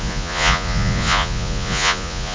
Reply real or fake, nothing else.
fake